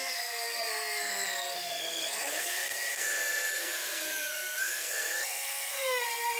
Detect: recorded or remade remade